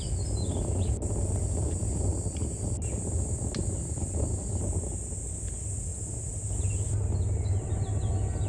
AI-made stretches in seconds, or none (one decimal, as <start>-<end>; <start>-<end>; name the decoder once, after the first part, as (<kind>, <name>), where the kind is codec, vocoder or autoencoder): none